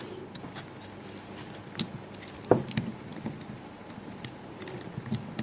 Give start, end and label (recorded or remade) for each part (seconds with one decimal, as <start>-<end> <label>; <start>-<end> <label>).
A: 0.0-5.4 recorded